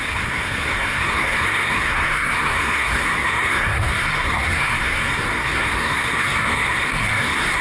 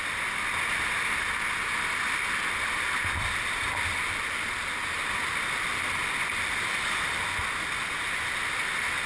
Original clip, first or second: second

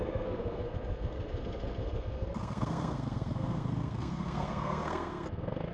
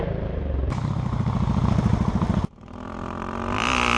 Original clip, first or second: second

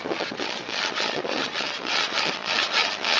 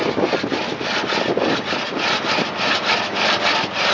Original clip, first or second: second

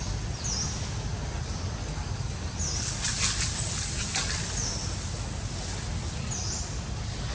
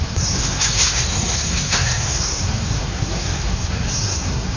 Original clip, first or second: first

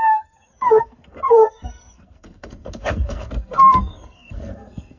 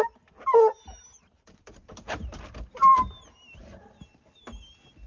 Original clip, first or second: second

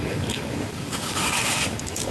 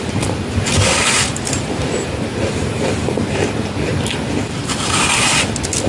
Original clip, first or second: second